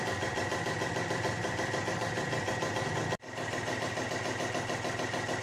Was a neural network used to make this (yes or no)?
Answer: no